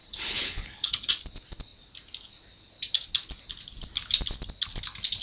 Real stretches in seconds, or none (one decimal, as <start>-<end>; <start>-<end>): 1.1-5.2